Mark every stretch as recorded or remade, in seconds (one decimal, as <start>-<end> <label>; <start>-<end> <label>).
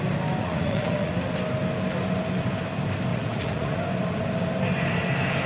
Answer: 0.0-0.4 recorded; 0.4-1.1 remade; 1.1-3.1 recorded; 3.1-3.8 remade; 3.8-5.5 recorded